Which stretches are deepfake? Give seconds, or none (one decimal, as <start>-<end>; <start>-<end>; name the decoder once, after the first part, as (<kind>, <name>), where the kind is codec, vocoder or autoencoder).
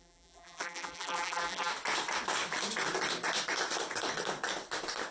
0.0-1.7 (vocoder, BigVGAN v2)